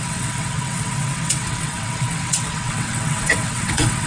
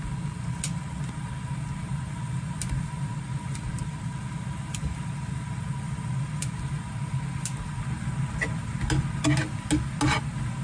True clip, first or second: second